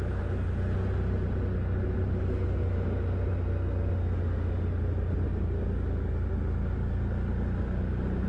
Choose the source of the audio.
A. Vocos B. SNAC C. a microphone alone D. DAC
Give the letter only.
C